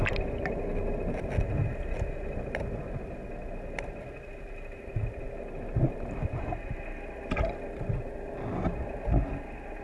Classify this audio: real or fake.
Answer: real